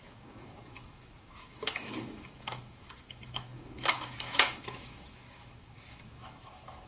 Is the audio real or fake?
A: fake